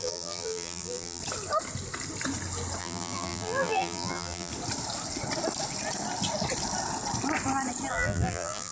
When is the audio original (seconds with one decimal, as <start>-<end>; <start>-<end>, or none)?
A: 1.2-2.8; 4.5-7.9